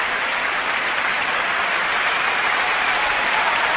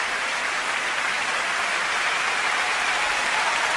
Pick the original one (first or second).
second